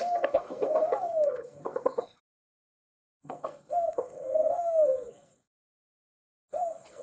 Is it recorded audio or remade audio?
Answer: remade